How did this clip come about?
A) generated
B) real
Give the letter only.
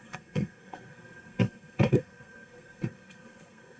A